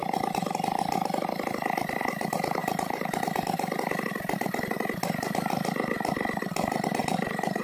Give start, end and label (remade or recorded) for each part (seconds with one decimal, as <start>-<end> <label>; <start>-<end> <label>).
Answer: 0.0-2.6 recorded; 2.6-3.2 remade; 3.2-7.0 recorded; 7.0-7.6 remade

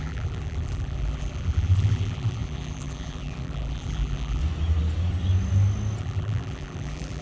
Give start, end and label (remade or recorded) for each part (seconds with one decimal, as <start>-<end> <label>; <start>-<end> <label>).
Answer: 0.0-4.4 remade; 4.4-6.0 recorded; 6.0-7.2 remade

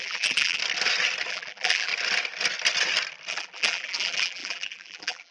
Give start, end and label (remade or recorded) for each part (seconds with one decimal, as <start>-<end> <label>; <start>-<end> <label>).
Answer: 0.0-0.6 remade; 0.6-1.3 recorded; 1.3-1.9 remade; 1.9-3.3 recorded; 3.3-5.3 remade